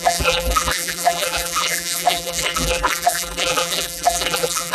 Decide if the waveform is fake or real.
fake